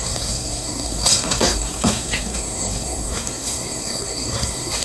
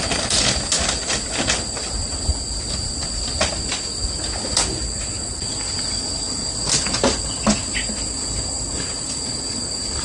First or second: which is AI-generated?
first